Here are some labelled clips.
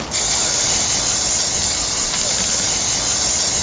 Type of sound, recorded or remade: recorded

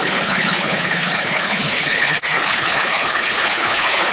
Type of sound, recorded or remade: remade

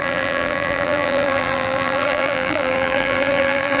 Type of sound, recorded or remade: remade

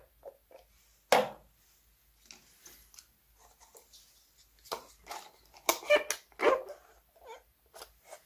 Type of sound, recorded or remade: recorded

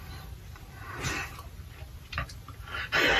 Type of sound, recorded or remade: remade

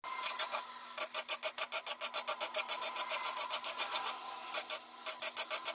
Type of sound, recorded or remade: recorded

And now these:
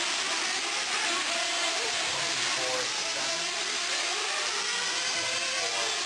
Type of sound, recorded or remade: recorded